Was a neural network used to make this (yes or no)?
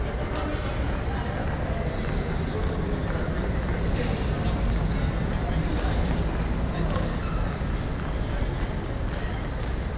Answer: no